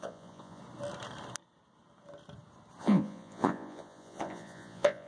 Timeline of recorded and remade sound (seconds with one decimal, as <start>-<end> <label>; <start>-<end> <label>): 0.0-0.6 remade; 0.6-2.8 recorded; 2.8-5.1 remade

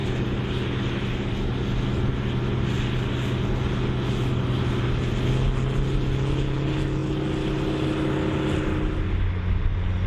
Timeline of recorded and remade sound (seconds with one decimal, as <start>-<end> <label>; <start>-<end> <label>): 0.0-10.1 recorded